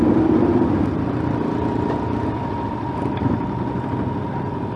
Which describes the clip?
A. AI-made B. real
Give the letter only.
B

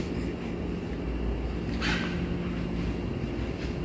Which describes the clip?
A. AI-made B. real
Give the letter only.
B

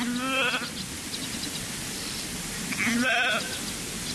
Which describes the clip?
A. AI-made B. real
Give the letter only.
B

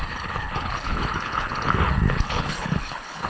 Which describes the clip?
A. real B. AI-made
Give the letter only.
B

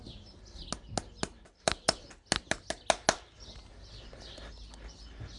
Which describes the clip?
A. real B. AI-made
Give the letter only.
A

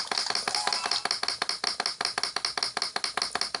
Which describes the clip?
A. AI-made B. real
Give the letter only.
B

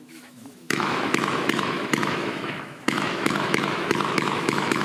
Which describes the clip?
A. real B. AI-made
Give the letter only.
B